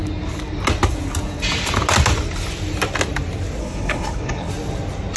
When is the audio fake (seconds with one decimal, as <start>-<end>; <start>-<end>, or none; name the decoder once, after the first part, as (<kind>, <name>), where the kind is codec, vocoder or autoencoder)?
3.6-4.5 (codec, HILCodec)